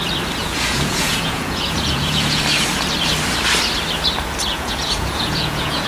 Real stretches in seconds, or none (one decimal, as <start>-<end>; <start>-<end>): 0.0-0.4; 2.4-4.5